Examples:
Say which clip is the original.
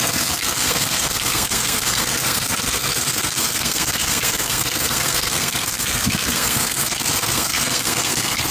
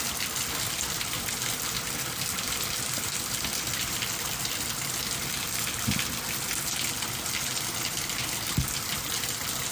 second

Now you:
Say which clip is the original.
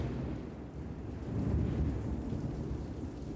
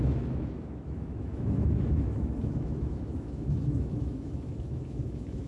first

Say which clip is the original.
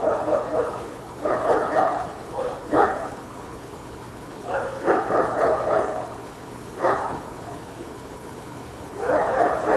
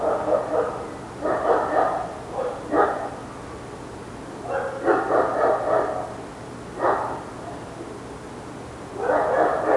second